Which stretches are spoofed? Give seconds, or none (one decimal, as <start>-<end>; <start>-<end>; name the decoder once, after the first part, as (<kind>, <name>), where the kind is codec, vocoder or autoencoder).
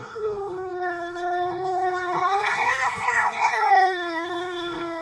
0.0-5.0 (codec, SNAC)